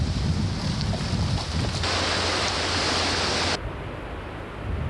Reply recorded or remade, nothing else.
recorded